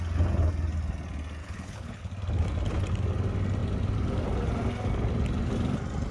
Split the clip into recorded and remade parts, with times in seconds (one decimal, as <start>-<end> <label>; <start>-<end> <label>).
0.0-1.4 recorded; 1.4-2.1 remade; 2.1-6.1 recorded